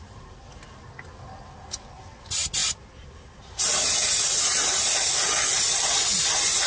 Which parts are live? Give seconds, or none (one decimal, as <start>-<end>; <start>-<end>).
0.0-6.7